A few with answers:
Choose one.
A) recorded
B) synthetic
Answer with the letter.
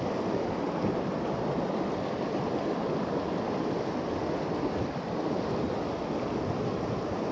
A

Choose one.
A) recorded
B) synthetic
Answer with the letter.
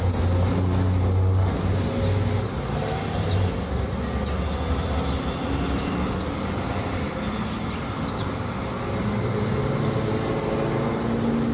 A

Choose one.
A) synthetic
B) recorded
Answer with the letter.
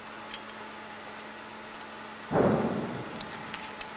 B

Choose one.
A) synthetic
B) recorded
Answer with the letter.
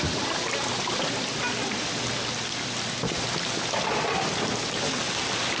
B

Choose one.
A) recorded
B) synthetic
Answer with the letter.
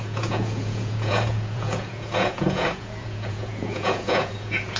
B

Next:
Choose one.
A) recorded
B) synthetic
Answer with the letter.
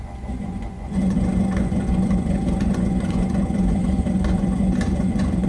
B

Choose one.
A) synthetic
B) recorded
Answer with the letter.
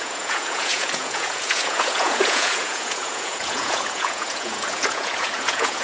A